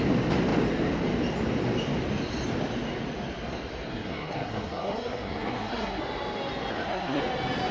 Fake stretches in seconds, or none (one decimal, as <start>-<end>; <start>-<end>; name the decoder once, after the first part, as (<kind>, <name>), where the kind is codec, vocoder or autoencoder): 3.9-6.0 (codec, SNAC); 6.7-7.2